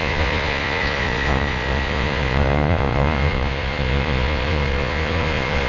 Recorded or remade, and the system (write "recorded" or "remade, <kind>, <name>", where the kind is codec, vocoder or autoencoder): remade, vocoder, Vocos